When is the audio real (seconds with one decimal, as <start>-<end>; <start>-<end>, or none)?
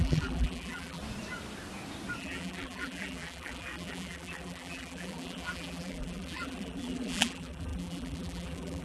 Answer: 1.0-2.2